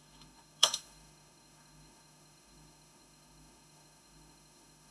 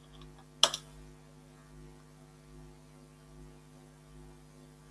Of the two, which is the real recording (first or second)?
second